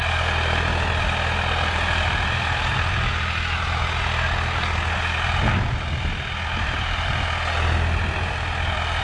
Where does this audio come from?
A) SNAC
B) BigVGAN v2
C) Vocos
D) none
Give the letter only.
D